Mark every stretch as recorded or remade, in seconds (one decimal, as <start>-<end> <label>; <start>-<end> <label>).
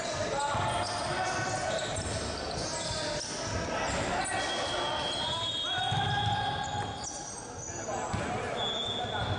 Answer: 0.0-9.4 recorded